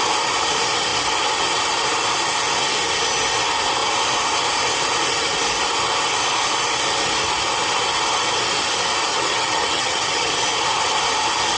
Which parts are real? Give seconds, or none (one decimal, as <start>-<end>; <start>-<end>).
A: 0.0-9.1; 10.3-11.6